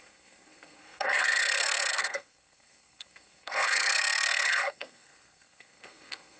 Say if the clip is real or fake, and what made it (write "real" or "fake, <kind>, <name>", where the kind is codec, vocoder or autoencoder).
fake, codec, SNAC